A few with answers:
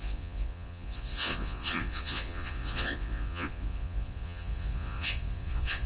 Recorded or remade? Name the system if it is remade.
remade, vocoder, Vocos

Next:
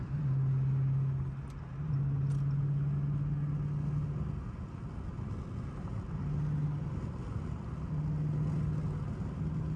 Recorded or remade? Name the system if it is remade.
recorded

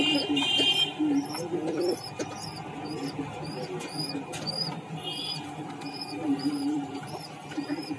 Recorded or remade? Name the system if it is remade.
recorded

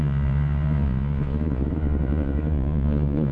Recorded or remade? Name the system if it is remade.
remade, vocoder, Vocos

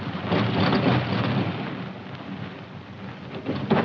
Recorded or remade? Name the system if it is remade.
recorded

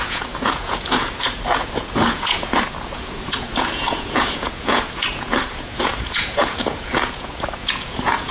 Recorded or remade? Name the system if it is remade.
remade, vocoder, Vocos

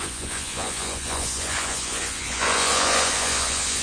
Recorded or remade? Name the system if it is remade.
remade, vocoder, Vocos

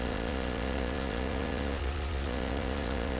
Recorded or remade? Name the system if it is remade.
remade, vocoder, Vocos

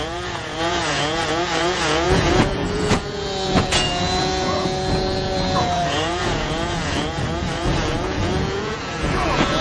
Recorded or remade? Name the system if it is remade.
remade, vocoder, Vocos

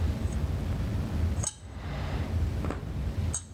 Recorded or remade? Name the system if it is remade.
recorded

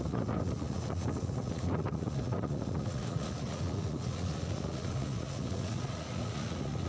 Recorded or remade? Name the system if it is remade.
remade, vocoder, Vocos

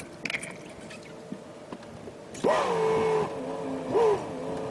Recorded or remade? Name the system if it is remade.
recorded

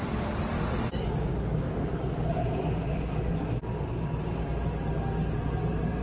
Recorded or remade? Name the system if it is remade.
recorded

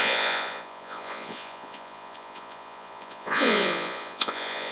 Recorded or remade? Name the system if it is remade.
remade, vocoder, Vocos